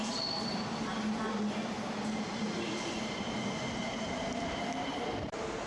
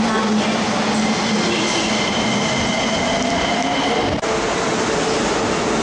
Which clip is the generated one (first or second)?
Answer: first